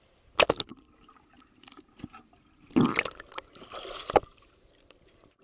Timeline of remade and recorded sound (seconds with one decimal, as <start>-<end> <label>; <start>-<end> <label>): 0.0-5.4 recorded